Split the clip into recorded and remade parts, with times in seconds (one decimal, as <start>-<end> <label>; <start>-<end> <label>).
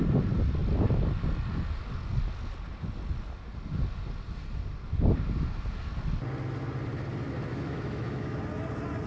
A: 0.0-7.5 recorded; 7.5-8.4 remade; 8.4-9.1 recorded